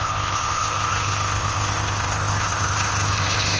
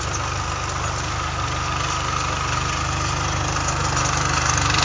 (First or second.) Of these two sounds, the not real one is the first